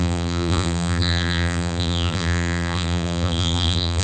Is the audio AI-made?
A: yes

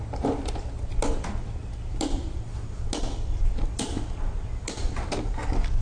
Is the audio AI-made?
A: no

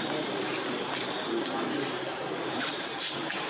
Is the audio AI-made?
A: yes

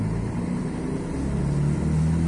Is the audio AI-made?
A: no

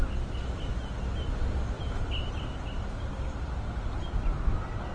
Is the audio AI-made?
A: no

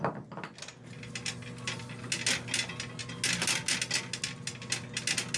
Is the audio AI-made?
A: no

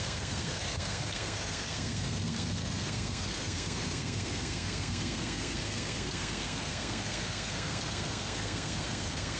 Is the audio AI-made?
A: yes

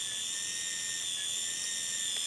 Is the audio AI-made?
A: no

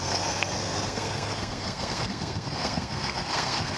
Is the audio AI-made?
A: yes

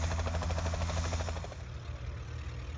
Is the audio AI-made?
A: no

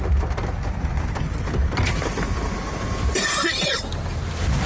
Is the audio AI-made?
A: no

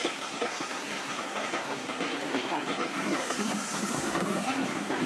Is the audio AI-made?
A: yes